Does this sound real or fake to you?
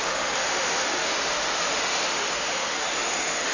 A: fake